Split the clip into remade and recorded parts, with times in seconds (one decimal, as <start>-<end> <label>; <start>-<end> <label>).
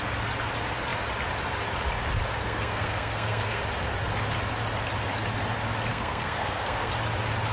0.0-2.4 recorded; 2.4-3.6 remade; 3.6-5.9 recorded; 5.9-6.9 remade; 6.9-7.5 recorded